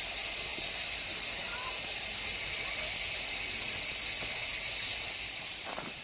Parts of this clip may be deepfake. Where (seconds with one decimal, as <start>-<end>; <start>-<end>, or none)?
none